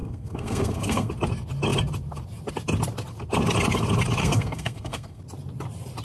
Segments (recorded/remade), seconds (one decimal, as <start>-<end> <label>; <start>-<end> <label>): 0.0-1.1 remade; 1.1-4.2 recorded; 4.2-5.2 remade; 5.2-6.0 recorded